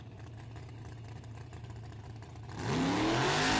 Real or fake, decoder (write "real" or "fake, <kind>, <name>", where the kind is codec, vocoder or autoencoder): real